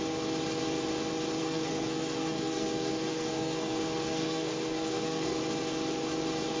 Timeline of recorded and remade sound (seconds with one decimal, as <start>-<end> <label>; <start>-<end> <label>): 0.0-1.4 recorded; 1.4-5.4 remade; 5.4-6.6 recorded